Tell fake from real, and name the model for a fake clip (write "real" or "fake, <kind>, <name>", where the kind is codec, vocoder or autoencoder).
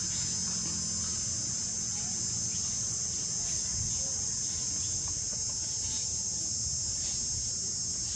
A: real